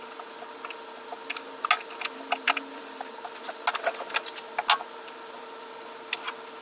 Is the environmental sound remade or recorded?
recorded